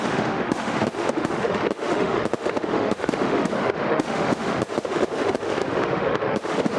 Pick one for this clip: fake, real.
fake